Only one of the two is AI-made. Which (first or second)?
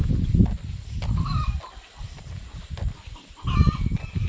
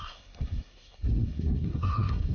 second